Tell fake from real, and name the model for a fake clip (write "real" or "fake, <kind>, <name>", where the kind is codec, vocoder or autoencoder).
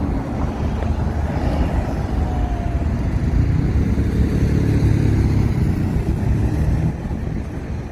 real